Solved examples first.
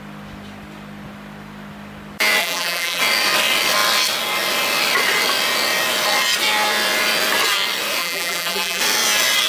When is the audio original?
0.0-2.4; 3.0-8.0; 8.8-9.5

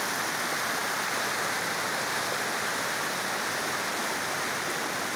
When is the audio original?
0.0-5.2

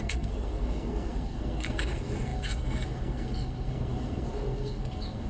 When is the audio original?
none

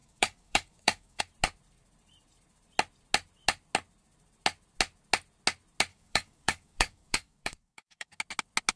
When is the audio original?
1.2-5.9; 8.2-8.8

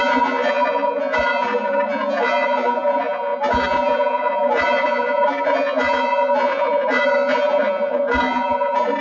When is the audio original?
none

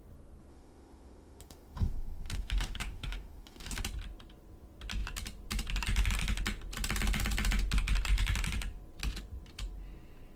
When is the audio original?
0.0-0.5; 3.8-10.4